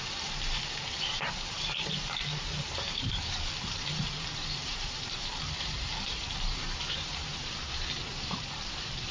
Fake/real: fake